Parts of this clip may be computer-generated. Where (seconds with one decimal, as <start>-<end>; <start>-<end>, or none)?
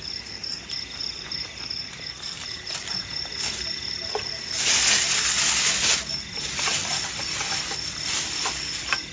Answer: 0.0-2.9; 6.1-6.8; 8.1-9.1